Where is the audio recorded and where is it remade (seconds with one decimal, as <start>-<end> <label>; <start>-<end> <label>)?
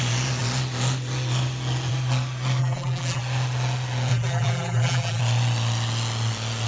0.0-2.6 recorded; 2.6-3.2 remade; 3.2-4.1 recorded; 4.1-5.2 remade; 5.2-6.7 recorded